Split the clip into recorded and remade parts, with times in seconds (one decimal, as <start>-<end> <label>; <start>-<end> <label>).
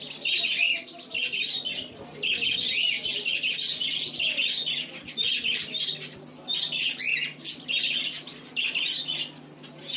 0.0-10.0 recorded